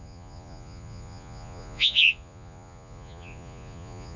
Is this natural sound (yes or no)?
no